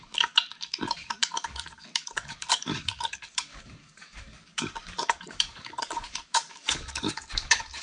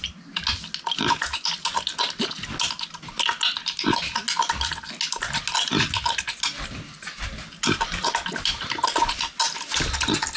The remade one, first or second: first